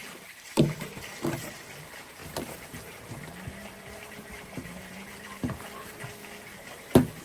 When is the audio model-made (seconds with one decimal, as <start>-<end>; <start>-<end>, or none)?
0.0-0.9; 2.2-6.0; 6.5-7.2